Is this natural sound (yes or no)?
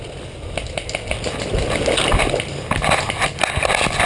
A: yes